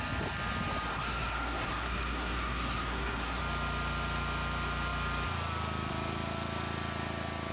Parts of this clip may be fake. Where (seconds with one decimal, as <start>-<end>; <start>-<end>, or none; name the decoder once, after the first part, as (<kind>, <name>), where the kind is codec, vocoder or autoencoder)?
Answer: 0.9-3.4 (codec, SNAC)